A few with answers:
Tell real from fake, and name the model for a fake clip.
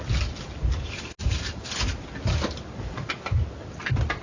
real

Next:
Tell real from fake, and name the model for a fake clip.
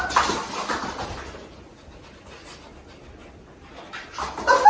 real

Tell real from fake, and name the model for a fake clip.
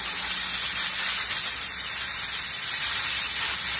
real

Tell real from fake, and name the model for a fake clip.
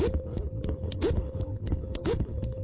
fake, codec, HILCodec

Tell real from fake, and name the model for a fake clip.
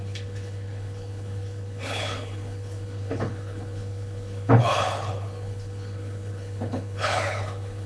fake, codec, HILCodec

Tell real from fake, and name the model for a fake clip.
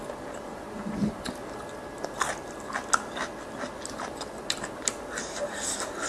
real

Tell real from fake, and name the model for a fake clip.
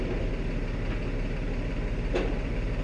real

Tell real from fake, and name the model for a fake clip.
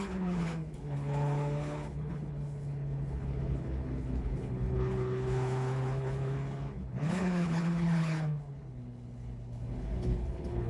fake, codec, HILCodec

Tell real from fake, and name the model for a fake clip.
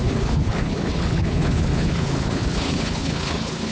fake, codec, HILCodec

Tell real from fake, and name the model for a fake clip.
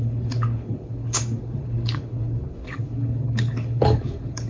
fake, codec, HILCodec